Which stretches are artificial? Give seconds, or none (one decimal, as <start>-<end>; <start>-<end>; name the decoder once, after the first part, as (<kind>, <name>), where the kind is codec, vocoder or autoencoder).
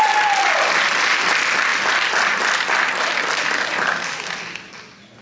none